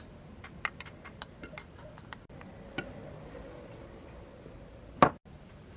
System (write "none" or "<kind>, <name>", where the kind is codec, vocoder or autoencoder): none